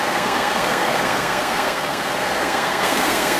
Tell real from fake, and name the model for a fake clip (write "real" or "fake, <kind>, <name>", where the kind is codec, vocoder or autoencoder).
fake, codec, SNAC